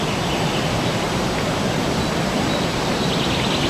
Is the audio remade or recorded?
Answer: recorded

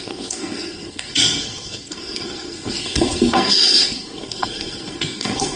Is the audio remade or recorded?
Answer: remade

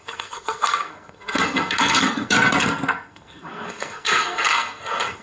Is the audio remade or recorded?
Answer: remade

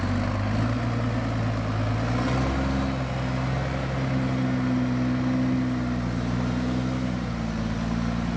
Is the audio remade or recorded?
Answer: recorded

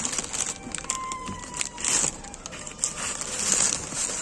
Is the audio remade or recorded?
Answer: recorded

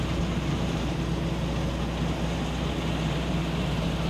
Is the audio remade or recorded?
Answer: recorded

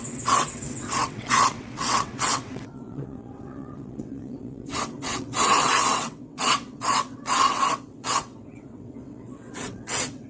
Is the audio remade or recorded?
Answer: remade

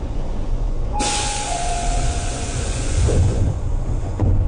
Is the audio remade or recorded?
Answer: remade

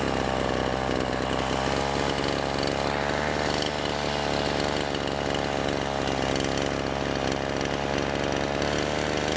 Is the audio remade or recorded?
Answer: recorded